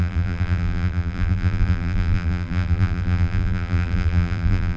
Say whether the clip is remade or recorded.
remade